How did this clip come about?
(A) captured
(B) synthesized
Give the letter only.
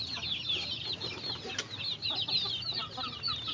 A